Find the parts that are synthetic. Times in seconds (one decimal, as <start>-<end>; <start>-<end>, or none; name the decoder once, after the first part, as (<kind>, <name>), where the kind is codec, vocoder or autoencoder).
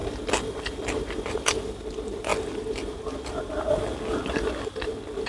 0.0-2.3 (vocoder, BigVGAN v2)